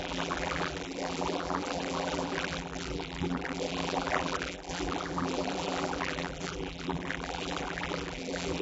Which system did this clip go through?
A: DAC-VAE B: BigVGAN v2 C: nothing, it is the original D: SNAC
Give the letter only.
B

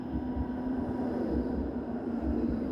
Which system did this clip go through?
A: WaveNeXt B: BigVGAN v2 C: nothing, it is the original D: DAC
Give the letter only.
B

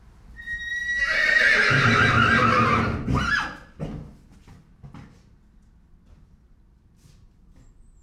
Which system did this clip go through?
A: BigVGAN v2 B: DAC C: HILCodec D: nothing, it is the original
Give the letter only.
D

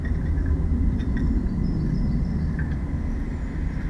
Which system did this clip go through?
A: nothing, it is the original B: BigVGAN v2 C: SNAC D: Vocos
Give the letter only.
B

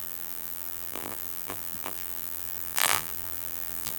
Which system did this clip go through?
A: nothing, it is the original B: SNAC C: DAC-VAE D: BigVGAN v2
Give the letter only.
D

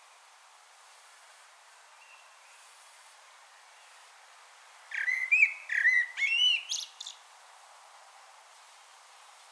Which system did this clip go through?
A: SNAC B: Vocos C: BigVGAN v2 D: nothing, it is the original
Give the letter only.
C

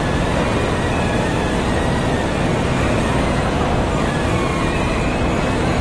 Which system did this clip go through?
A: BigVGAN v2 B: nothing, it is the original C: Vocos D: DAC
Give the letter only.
A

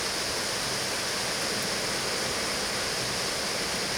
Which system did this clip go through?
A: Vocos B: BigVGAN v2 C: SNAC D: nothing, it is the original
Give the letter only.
D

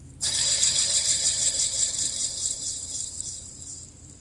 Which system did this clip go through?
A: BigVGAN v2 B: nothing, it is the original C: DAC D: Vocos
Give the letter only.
A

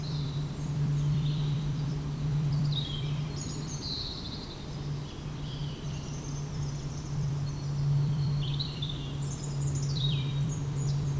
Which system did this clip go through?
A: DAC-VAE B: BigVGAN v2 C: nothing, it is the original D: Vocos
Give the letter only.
B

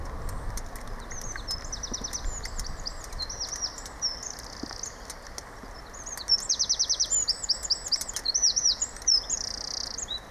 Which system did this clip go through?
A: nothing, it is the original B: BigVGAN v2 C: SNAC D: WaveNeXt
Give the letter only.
A